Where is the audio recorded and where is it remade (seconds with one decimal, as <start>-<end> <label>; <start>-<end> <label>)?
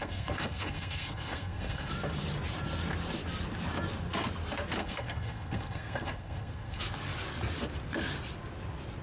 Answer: 0.0-1.9 remade; 1.9-4.8 recorded; 4.8-6.8 remade; 6.8-9.0 recorded